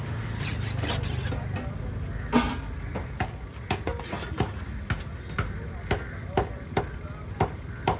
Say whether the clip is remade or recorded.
recorded